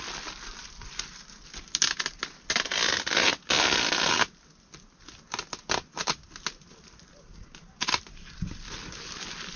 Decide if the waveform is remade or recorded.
recorded